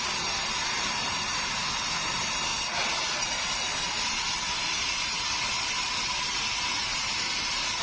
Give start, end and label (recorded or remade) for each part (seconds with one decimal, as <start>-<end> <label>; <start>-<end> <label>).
0.0-7.8 recorded